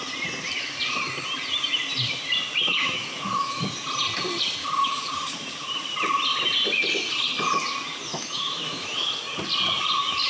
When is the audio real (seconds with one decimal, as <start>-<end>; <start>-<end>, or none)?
0.0-2.7; 3.6-4.6; 5.1-8.1; 9.1-10.3